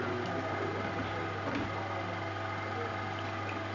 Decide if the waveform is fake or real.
real